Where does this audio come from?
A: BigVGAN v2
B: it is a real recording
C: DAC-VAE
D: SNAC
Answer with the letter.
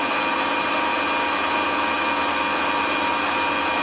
B